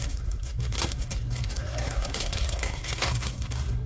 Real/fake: fake